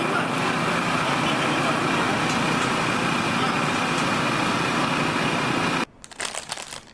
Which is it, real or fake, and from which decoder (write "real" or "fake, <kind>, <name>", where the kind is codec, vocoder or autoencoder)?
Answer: real